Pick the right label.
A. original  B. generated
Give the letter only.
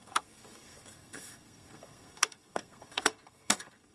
B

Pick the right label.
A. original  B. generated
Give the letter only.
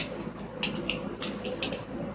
A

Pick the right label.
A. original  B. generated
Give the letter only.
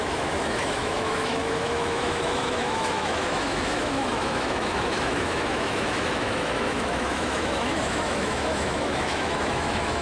B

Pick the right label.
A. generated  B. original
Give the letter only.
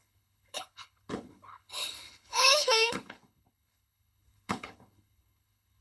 A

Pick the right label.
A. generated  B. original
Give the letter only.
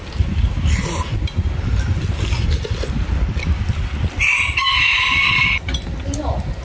B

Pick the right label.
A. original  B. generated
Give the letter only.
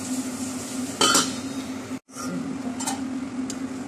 A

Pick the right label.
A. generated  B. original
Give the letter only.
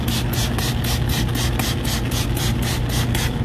B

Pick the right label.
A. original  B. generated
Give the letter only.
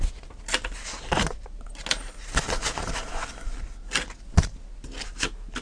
A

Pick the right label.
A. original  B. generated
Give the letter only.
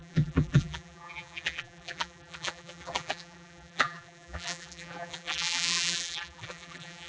B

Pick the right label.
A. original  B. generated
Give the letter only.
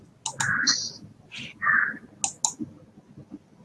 A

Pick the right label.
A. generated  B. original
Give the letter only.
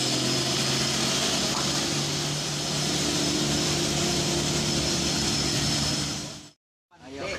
B